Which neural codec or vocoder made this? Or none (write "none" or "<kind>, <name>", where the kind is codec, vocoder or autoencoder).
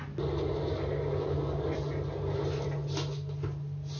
none